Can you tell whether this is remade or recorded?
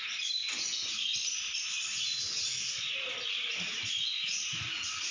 recorded